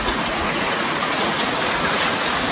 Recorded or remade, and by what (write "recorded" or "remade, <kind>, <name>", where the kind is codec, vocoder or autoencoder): remade, vocoder, Vocos